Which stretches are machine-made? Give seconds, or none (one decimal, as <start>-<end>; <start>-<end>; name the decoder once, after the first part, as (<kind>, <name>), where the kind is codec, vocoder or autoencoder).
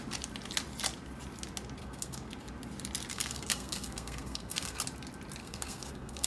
1.8-2.3 (codec, SNAC); 3.1-4.8; 5.4-6.3